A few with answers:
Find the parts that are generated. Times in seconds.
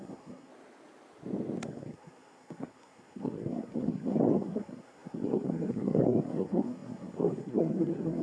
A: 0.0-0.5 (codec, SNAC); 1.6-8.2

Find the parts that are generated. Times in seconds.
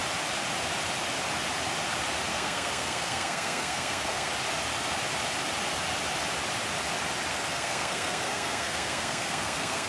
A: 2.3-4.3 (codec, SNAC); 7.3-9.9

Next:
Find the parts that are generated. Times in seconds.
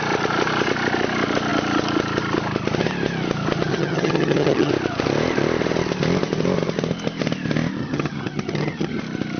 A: 3.7-4.7 (vocoder, HiFi-GAN); 7.8-9.0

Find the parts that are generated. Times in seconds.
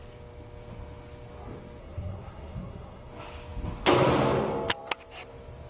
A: 1.8-3.1 (codec, SNAC)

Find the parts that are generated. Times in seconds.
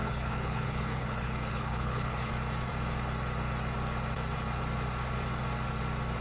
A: 0.0-2.3 (codec, HILCodec)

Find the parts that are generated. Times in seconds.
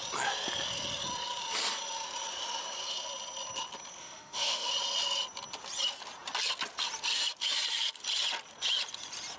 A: 4.0-4.7 (autoencoder, DAC-VAE)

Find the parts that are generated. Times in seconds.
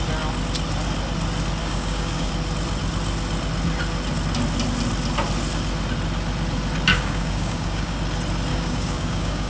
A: 1.6-2.3 (codec, DAC); 6.9-8.0; 8.5-9.5